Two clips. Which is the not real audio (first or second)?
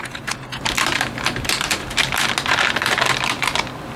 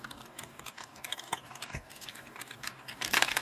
second